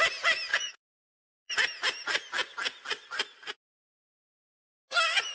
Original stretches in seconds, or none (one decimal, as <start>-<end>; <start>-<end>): 0.0-0.5; 1.1-5.3